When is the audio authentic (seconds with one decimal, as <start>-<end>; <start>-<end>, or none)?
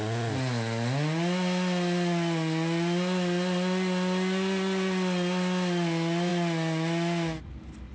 0.0-7.9